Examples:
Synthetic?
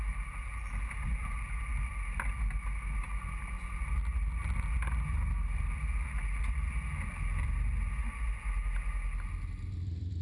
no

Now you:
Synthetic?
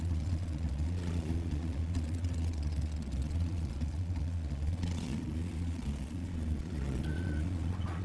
yes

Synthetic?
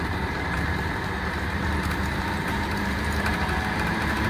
yes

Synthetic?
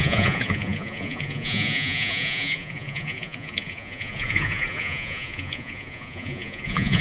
yes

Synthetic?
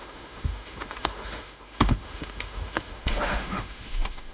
yes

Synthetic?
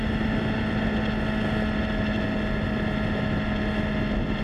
no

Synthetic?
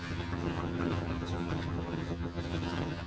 yes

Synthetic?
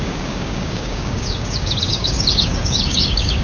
yes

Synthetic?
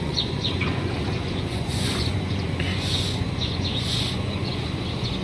yes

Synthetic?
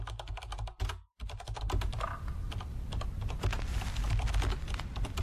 no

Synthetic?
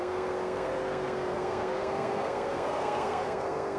yes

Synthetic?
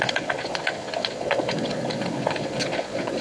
yes